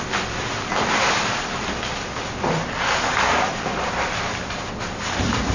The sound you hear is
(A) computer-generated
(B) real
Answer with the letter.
A